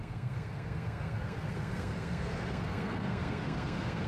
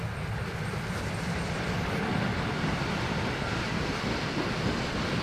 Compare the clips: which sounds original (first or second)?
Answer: second